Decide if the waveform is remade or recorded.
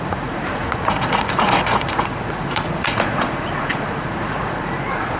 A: remade